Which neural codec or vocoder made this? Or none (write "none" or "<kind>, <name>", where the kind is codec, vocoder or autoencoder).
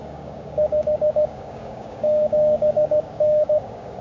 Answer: codec, DAC